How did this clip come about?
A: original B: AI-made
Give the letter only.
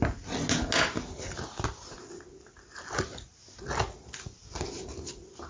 A